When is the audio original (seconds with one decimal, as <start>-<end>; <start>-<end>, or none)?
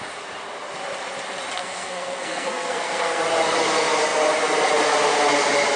0.0-1.6; 3.2-5.8